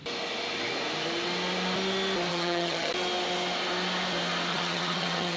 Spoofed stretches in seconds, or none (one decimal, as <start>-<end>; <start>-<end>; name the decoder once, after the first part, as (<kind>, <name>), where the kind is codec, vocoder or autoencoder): 2.3-2.9 (vocoder, HiFi-GAN); 4.5-5.4